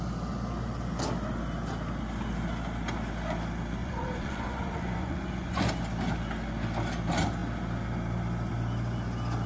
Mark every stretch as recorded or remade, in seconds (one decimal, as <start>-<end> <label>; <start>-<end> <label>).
0.0-3.8 recorded; 3.8-5.7 remade; 5.7-9.5 recorded